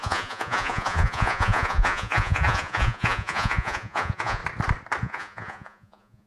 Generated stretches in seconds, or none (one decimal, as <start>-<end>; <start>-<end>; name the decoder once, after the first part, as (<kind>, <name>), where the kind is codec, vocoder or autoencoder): 0.0-4.4 (vocoder, Vocos); 5.0-6.3